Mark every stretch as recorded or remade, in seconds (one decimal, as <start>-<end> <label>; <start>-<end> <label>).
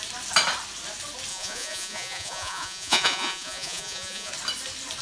0.0-1.3 recorded; 1.3-4.3 remade; 4.3-5.0 recorded